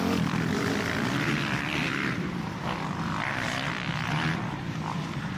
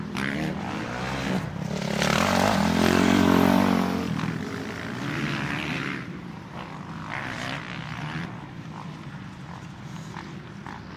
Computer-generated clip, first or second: first